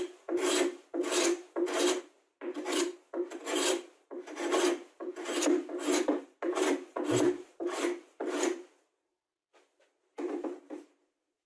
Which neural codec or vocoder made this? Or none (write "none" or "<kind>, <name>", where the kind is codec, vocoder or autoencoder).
none